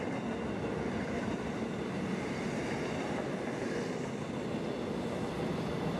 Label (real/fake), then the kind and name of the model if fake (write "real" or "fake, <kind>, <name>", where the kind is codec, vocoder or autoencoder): real